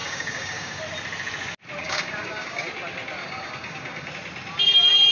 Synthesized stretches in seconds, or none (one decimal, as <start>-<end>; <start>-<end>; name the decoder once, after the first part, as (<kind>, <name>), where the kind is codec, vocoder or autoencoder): 0.0-0.8 (codec, DAC); 1.8-2.7; 3.2-4.1